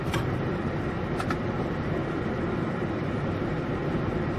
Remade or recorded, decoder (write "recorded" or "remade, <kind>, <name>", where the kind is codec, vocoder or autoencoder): recorded